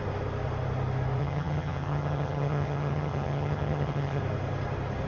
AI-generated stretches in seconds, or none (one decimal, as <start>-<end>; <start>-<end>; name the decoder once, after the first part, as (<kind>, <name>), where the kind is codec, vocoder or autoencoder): 1.2-4.2 (vocoder, HiFi-GAN)